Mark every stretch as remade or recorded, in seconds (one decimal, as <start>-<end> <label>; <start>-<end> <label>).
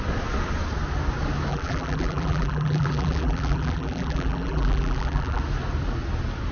0.0-1.5 recorded; 1.5-5.4 remade; 5.4-6.5 recorded